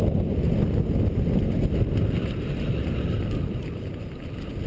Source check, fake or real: real